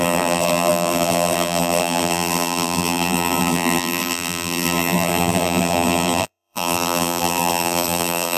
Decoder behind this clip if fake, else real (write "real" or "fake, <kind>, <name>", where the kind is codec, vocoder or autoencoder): fake, vocoder, BigVGAN v2